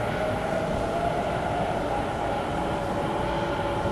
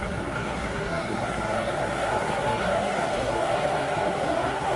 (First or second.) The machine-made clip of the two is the second